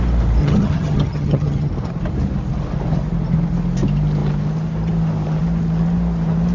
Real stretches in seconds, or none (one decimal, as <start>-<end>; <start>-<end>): 0.0-0.4; 1.7-6.5